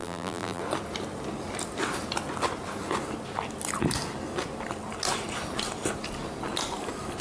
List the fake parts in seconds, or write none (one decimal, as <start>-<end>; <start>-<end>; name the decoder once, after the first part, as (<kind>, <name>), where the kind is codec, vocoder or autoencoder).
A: 0.0-0.6 (vocoder, BigVGAN v2)